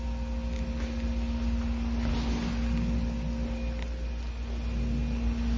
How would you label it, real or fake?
real